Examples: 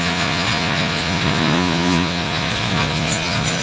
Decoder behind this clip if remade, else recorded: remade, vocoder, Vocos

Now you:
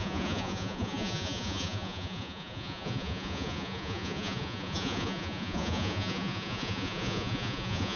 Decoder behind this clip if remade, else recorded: remade, vocoder, Vocos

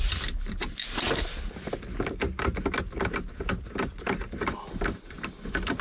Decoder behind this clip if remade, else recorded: recorded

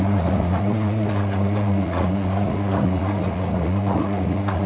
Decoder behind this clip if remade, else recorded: remade, vocoder, Vocos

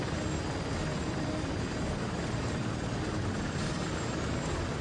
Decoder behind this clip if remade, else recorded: recorded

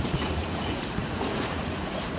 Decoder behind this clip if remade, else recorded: remade, vocoder, Vocos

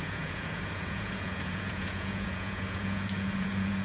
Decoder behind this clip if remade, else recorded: remade, vocoder, Vocos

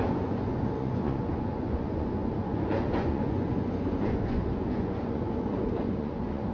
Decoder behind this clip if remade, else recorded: remade, vocoder, Vocos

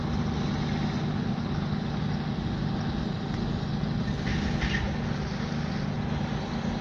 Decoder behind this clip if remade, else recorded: recorded